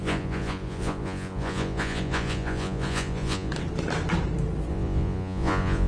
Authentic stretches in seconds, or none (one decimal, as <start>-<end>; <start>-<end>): 3.5-4.7